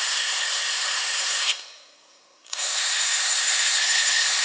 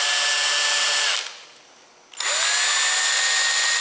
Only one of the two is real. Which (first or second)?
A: second